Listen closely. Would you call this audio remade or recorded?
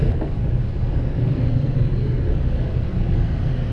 remade